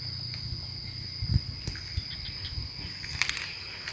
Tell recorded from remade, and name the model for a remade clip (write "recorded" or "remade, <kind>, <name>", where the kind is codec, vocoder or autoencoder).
recorded